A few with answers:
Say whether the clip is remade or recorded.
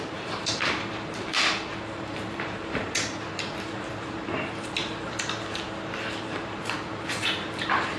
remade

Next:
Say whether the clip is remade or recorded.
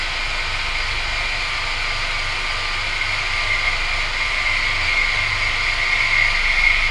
recorded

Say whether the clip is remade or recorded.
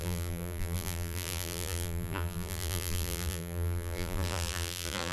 remade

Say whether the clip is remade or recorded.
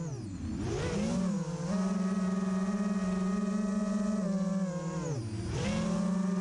recorded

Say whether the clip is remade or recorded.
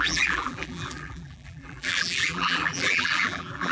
remade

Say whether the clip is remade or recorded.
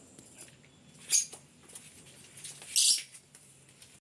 recorded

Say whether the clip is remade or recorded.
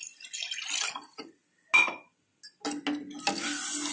recorded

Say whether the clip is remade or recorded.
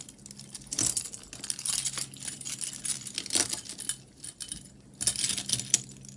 recorded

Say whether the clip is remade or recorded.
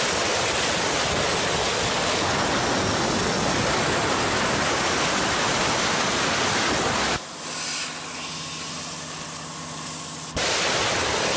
recorded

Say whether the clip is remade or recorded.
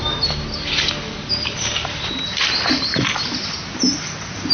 remade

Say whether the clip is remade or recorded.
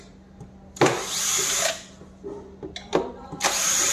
recorded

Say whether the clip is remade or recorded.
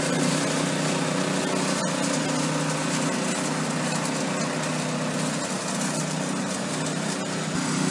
recorded